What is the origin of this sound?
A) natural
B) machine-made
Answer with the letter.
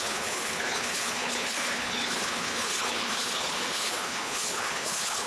B